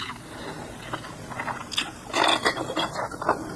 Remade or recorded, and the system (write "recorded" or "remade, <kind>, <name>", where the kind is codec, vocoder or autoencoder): recorded